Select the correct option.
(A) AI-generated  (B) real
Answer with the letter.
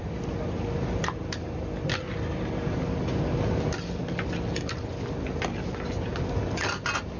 B